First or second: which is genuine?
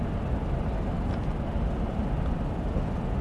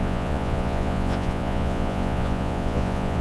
first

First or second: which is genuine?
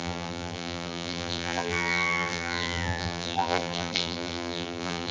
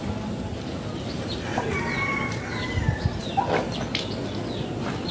second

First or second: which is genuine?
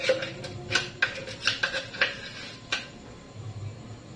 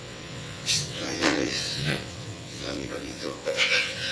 first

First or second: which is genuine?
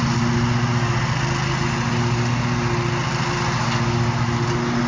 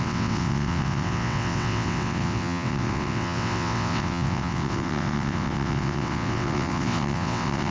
first